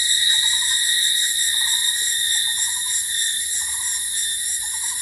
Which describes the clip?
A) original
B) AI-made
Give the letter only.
A